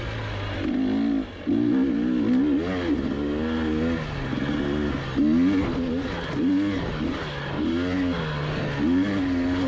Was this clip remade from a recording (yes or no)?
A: no